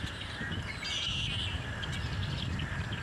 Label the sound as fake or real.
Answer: real